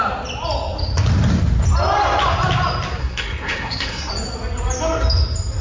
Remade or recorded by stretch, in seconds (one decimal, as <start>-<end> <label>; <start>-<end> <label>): 0.0-3.0 recorded; 3.0-4.1 remade; 4.1-5.6 recorded